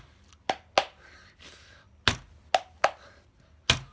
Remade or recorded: recorded